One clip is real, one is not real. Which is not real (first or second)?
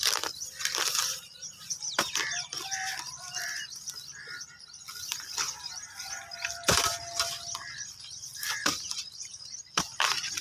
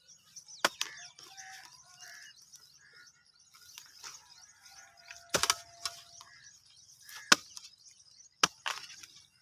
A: first